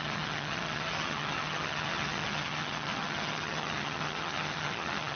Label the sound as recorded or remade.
remade